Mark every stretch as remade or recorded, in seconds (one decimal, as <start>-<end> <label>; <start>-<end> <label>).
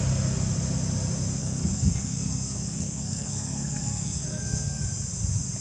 0.0-1.4 recorded; 1.4-4.8 remade; 4.8-5.6 recorded